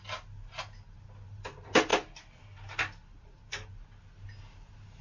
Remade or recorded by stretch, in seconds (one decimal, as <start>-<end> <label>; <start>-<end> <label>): 0.0-5.0 recorded